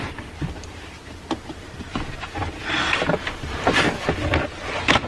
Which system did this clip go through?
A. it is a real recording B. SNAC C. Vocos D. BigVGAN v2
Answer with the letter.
A